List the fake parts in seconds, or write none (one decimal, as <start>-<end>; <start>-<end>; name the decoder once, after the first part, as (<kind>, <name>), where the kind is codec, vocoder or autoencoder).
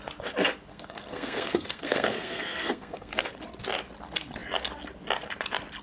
0.7-3.3 (codec, SNAC)